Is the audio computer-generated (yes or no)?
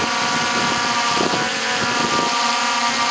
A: no